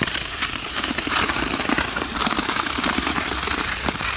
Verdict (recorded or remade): remade